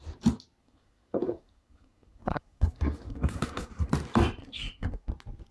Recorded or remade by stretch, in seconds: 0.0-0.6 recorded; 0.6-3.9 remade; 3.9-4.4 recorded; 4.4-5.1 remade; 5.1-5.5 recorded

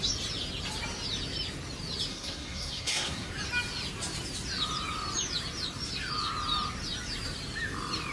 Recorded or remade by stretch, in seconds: 0.0-2.1 recorded; 2.1-3.3 remade; 3.3-8.1 recorded

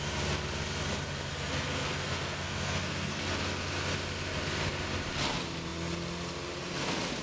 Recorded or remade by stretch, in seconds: 0.0-1.3 recorded; 1.3-3.2 remade; 3.2-7.2 recorded

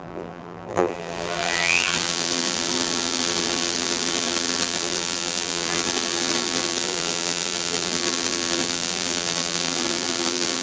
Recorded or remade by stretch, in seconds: 0.0-10.6 remade

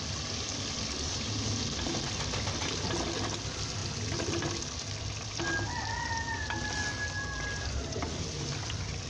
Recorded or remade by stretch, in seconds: 0.0-9.1 recorded

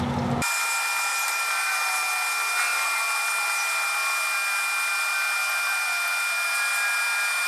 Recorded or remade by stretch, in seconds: 0.0-1.1 recorded; 1.1-1.7 remade; 1.7-7.5 recorded

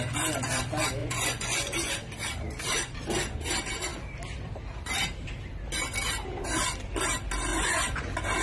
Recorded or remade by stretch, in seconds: 0.0-1.0 recorded; 1.0-1.9 remade; 1.9-7.5 recorded; 7.5-8.0 remade; 8.0-8.4 recorded